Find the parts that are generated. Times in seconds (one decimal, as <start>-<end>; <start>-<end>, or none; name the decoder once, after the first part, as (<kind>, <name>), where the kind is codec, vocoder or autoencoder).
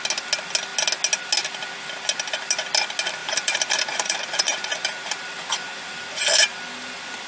3.2-6.2 (vocoder, BigVGAN v2)